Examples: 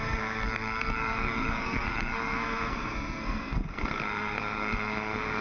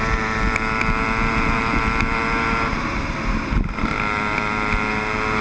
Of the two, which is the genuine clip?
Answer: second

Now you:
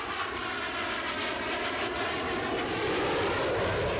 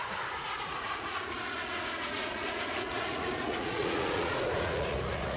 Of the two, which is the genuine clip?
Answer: first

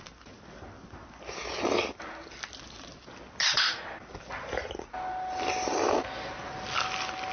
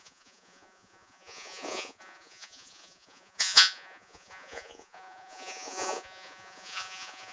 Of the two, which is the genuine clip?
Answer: first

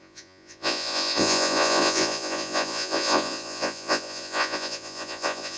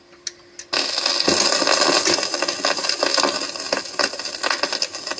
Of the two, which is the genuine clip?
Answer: second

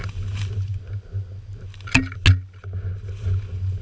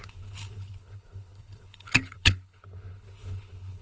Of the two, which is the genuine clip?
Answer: first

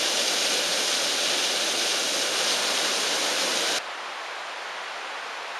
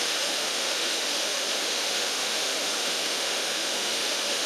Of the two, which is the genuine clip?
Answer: first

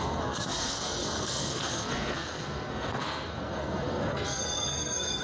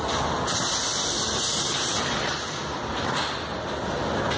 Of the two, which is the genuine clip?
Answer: second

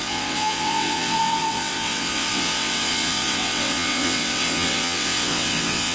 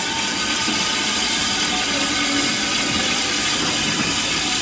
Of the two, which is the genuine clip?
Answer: second